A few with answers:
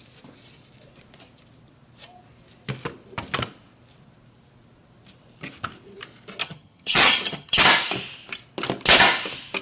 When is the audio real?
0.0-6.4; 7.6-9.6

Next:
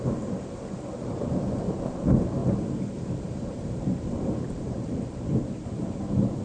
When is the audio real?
2.4-3.1

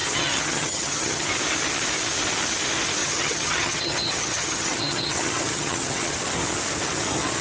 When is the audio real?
1.3-3.0; 6.2-7.4

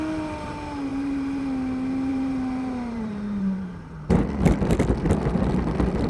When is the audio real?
0.0-0.9; 1.4-2.1; 4.2-6.1